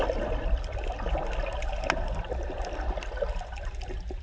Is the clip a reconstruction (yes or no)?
no